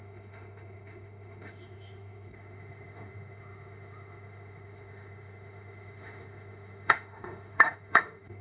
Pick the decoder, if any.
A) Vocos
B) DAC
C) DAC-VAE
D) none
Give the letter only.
C